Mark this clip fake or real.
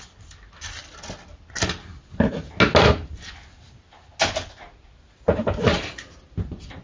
real